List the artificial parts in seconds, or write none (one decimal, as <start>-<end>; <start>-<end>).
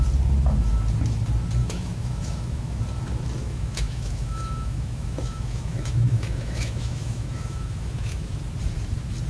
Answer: 1.6-2.8; 3.4-8.4